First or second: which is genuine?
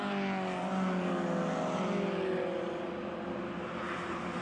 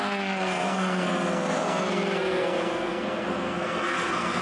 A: first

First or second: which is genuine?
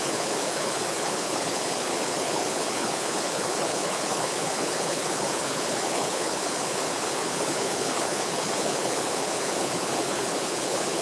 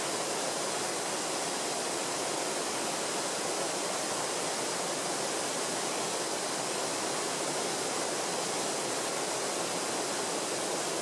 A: second